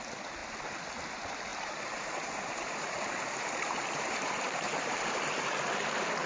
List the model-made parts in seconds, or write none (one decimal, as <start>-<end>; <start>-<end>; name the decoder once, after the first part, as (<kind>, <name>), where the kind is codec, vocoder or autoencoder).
1.5-5.0 (vocoder, BigVGAN v2)